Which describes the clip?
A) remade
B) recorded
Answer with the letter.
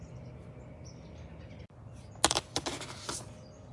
B